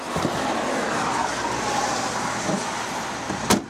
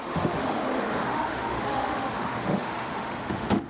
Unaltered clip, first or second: first